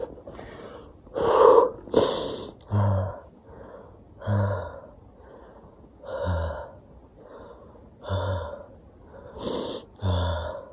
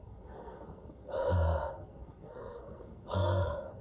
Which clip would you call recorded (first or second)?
first